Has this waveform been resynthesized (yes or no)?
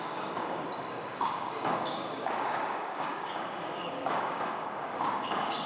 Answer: yes